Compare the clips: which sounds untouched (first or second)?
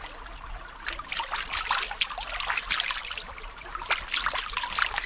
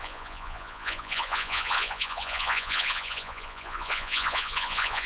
first